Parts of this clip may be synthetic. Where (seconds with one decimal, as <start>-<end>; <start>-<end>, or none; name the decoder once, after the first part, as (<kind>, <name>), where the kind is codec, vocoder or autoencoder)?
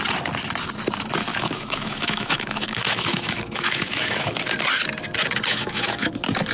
1.3-4.4 (autoencoder, DAC-VAE); 5.5-6.1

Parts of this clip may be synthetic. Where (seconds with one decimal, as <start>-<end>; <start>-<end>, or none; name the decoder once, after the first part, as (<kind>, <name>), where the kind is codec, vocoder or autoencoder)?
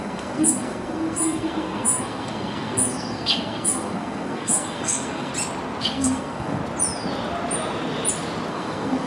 0.0-5.3 (codec, SNAC); 5.8-6.6; 8.5-9.1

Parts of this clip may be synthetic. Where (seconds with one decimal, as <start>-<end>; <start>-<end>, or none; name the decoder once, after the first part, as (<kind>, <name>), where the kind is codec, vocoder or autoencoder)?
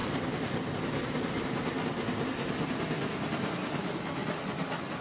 0.0-0.8 (vocoder, BigVGAN v2)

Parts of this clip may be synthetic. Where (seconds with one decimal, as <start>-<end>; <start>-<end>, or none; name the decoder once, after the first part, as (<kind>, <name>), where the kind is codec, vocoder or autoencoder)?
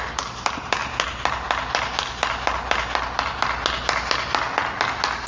none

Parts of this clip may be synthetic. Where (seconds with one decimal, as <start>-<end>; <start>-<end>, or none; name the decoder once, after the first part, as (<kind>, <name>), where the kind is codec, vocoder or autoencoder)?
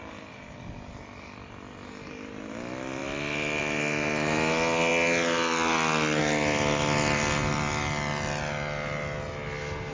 none